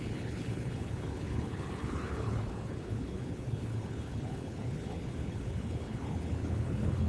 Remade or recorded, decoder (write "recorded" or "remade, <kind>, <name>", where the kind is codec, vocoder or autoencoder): remade, codec, HILCodec